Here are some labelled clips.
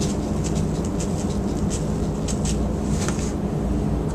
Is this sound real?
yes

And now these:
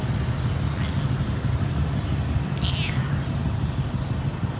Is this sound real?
yes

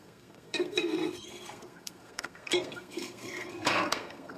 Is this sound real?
no